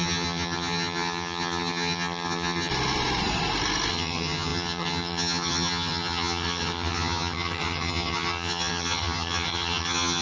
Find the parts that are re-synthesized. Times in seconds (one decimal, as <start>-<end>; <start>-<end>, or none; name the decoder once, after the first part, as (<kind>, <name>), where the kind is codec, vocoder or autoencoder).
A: 0.0-2.7 (vocoder, HiFi-GAN); 3.9-10.2